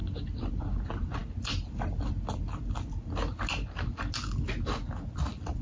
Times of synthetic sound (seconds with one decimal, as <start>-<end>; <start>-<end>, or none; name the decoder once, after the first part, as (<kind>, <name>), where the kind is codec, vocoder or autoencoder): none